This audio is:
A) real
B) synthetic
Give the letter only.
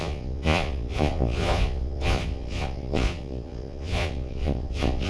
B